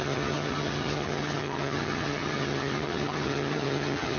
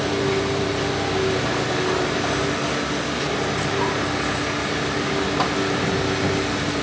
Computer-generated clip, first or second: first